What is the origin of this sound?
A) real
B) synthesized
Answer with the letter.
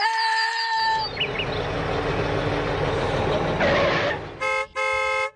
A